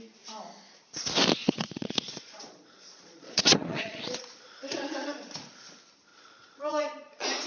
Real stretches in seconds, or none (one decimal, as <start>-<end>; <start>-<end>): 0.0-1.4; 5.5-6.1